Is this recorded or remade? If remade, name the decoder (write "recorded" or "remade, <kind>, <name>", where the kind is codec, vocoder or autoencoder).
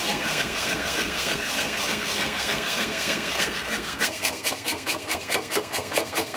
remade, codec, SNAC